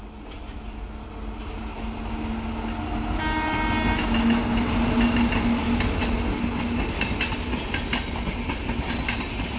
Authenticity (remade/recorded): recorded